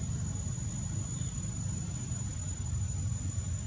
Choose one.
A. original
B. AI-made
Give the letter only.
A